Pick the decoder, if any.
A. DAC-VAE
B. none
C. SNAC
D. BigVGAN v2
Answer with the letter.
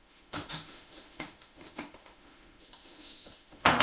A